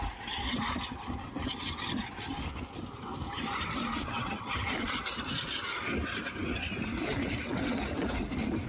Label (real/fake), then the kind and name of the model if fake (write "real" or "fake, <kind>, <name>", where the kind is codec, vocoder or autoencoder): real